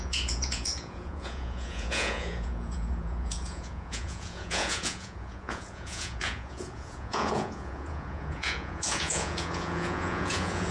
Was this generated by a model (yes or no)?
yes